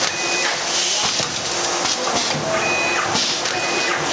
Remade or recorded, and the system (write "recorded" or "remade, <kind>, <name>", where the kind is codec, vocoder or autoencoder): recorded